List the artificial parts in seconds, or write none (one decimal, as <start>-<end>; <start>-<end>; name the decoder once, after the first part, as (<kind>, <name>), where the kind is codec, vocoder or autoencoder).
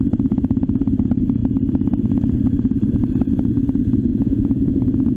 4.1-4.7 (vocoder, Vocos)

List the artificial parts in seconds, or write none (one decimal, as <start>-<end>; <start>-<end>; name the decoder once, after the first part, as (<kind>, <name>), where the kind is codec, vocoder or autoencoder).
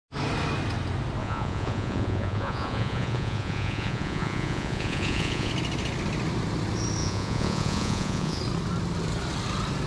1.2-5.5 (vocoder, Vocos); 7.0-8.4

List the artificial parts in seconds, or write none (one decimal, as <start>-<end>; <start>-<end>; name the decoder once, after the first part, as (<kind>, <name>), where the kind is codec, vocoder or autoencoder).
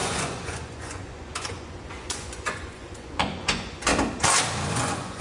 0.0-3.9 (vocoder, Vocos); 4.7-5.2